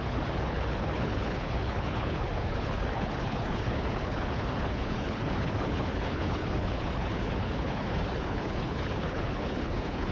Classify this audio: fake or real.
fake